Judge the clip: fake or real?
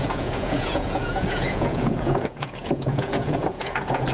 fake